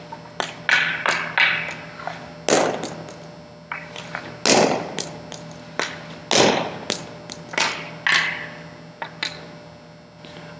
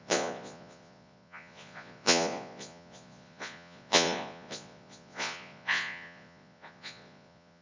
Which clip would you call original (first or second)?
first